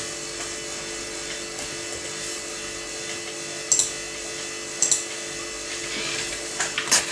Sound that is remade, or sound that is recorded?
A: recorded